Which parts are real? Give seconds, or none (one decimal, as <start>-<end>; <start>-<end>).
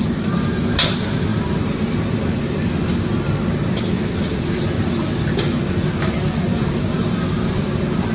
0.0-8.1